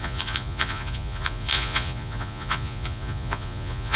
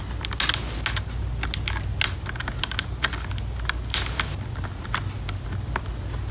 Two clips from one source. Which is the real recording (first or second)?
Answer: second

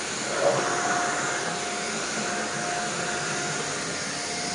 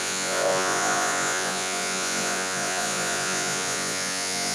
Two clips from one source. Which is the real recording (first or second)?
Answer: first